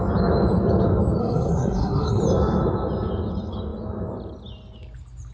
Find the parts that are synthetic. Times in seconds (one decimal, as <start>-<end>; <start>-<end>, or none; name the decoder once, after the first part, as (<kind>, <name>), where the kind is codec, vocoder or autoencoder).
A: 1.2-2.2 (codec, SNAC)